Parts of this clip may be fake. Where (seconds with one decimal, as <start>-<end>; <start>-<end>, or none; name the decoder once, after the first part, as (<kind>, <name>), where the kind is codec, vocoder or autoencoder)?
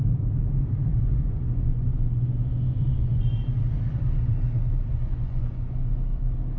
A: 0.9-3.2 (vocoder, Vocos); 4.9-5.9